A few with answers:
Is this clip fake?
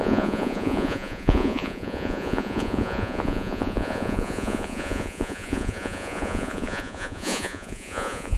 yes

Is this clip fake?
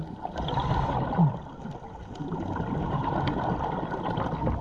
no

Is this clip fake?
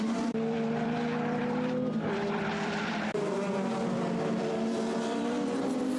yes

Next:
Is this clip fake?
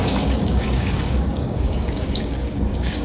yes